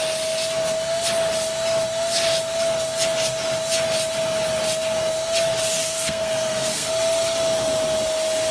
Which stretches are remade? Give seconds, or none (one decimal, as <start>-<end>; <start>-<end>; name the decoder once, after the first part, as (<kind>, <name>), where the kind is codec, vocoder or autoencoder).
5.8-6.9 (codec, SNAC)